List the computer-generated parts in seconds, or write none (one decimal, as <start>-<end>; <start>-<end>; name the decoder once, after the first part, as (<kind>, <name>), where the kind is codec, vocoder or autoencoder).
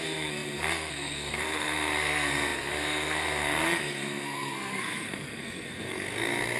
0.0-6.6 (codec, SNAC)